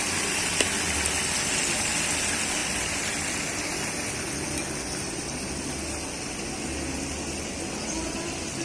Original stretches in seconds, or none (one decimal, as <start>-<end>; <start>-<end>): 0.0-8.6